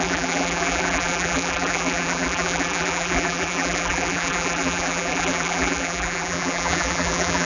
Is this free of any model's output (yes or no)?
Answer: no